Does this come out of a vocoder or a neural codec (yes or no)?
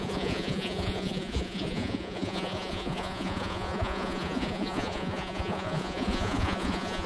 yes